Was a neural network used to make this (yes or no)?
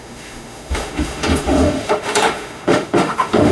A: yes